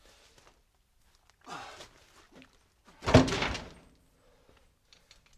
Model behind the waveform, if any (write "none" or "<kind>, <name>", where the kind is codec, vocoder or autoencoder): none